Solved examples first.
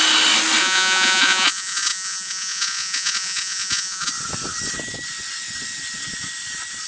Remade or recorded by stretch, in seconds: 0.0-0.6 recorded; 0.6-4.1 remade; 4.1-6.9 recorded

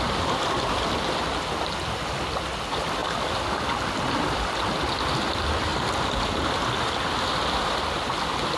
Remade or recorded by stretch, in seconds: 0.0-8.6 recorded